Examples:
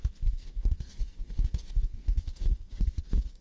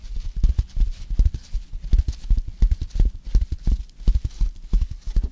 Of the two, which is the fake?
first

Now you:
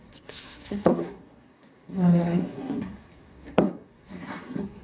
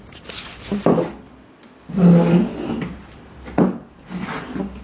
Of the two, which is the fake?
first